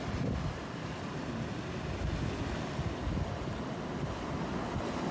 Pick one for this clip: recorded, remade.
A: recorded